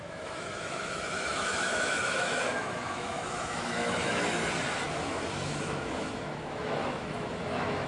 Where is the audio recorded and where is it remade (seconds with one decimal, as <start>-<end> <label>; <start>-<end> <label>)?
0.0-4.4 remade; 4.4-4.9 recorded; 4.9-7.9 remade